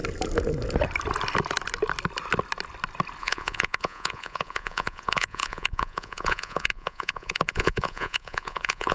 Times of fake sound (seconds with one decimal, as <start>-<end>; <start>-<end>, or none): 3.2-8.9